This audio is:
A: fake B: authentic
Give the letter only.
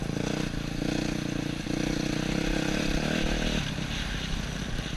B